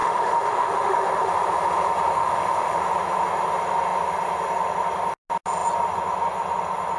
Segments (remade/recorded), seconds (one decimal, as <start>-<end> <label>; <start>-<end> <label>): 0.0-1.3 remade; 1.3-2.1 recorded; 2.1-2.8 remade; 2.8-7.0 recorded